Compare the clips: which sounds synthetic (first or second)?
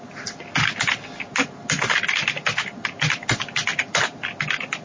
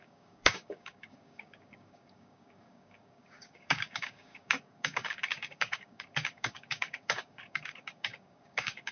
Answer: second